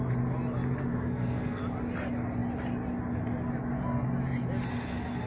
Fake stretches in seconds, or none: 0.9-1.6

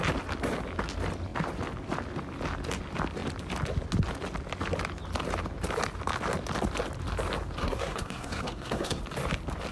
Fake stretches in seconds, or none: 7.6-9.0

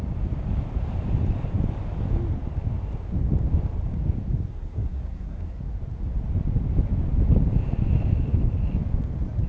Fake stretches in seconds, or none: 4.5-5.6

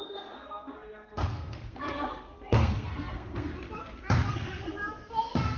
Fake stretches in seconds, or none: 0.0-3.5; 4.3-5.6

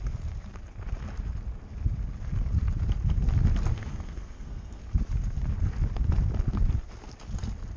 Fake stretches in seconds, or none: 3.7-4.8

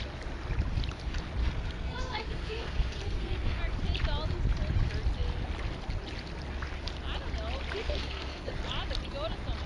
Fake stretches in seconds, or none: 1.4-3.6; 7.8-8.5

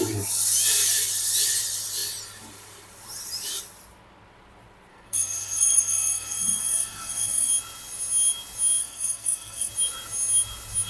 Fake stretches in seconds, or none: 4.9-7.5; 8.8-9.7

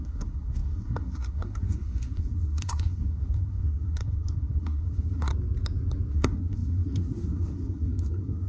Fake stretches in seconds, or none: 0.0-5.3; 6.1-8.5